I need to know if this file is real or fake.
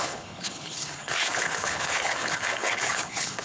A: fake